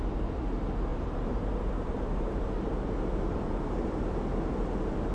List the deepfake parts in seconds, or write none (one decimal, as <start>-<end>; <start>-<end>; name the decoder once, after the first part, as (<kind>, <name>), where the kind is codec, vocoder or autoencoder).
0.9-4.0 (vocoder, BigVGAN v2)